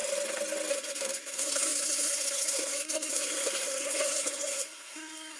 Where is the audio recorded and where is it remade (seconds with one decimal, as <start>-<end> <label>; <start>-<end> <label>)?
0.0-0.7 recorded; 0.7-5.4 remade